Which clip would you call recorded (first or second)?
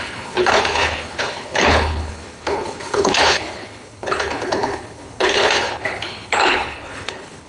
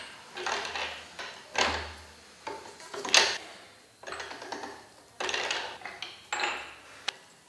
second